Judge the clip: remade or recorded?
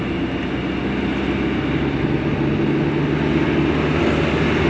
recorded